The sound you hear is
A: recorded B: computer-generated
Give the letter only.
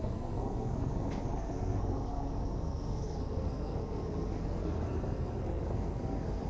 B